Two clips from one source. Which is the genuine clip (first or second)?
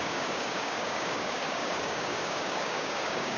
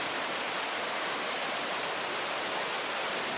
second